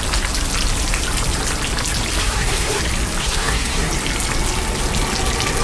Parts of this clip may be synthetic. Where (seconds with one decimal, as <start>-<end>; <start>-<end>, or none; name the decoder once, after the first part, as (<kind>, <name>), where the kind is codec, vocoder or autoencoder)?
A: 2.2-2.8 (codec, SNAC); 3.2-3.9

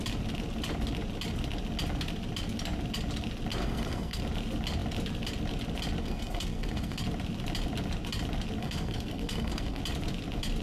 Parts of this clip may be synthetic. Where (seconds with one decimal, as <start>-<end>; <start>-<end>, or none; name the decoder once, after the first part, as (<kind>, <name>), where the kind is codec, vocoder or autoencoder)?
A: 3.6-4.2 (codec, SNAC); 6.0-7.0; 8.6-9.8